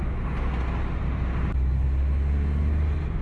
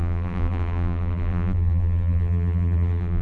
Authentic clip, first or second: first